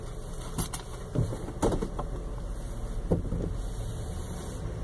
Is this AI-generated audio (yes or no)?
no